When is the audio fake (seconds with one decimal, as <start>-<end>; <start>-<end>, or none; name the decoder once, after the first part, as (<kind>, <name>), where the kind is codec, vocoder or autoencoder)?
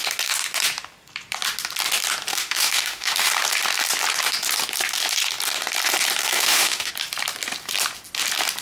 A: 2.3-3.3 (autoencoder, DAC-VAE); 6.2-6.9